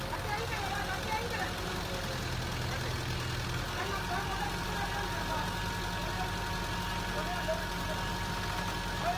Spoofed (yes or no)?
no